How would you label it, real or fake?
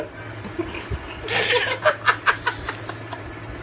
real